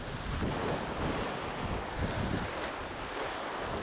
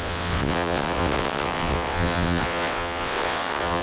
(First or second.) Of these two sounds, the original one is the first